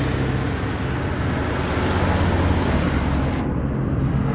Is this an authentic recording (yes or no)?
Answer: yes